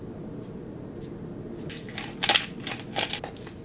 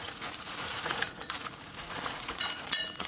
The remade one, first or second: second